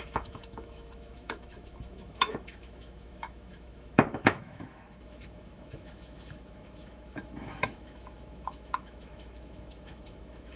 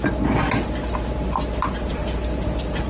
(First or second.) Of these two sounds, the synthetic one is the first